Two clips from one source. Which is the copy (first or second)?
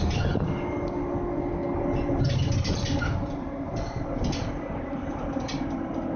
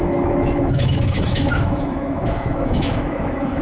second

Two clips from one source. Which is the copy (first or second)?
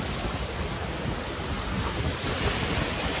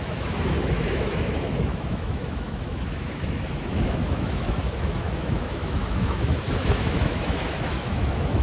second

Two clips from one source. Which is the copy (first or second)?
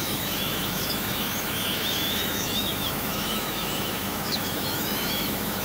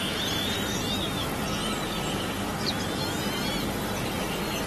first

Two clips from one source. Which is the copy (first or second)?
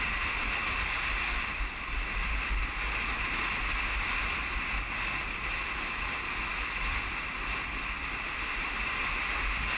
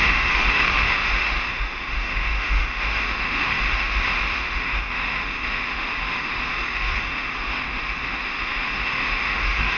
second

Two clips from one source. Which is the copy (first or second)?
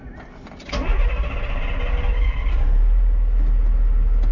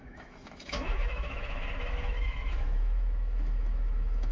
second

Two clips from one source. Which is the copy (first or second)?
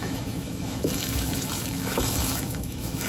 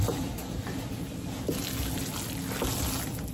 first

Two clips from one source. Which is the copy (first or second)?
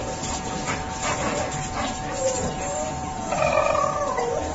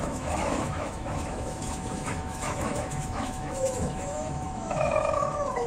second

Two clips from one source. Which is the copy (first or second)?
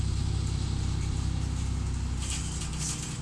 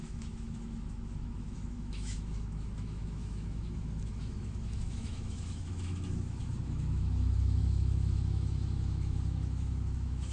second